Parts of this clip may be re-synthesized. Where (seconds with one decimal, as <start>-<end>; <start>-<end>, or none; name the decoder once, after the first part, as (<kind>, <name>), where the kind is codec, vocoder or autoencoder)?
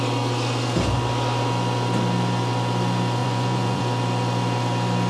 3.2-3.8 (vocoder, Vocos)